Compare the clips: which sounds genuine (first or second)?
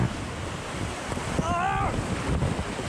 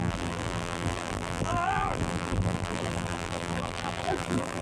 first